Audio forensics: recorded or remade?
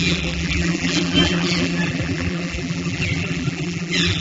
remade